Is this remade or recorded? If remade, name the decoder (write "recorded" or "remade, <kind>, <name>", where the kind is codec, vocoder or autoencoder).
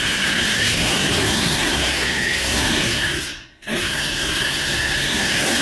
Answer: remade, codec, SNAC